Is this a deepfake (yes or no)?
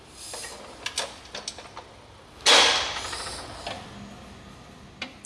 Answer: no